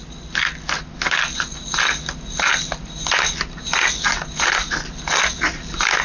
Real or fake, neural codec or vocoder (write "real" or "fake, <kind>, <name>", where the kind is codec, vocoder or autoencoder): real